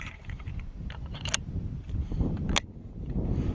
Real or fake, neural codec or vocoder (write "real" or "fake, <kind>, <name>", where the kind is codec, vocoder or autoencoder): fake, vocoder, BigVGAN v2